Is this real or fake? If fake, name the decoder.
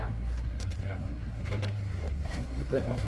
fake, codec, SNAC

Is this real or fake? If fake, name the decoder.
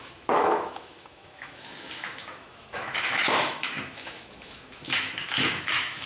fake, autoencoder, DAC-VAE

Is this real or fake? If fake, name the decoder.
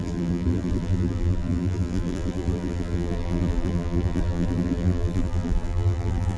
fake, vocoder, BigVGAN v2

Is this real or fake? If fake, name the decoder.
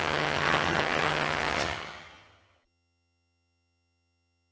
fake, vocoder, HiFi-GAN